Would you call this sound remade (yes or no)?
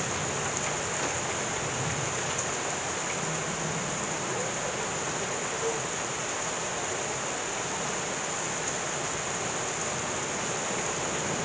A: no